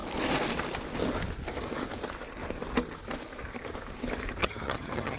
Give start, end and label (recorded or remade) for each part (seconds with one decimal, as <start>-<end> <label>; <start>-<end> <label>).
0.0-4.4 recorded; 4.4-5.2 remade